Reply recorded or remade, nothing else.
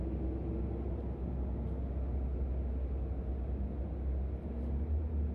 recorded